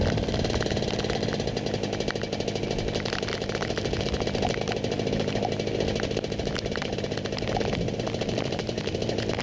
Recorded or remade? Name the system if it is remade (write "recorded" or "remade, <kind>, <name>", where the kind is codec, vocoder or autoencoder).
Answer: recorded